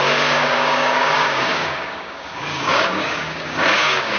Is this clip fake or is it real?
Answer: fake